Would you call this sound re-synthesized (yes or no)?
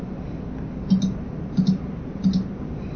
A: no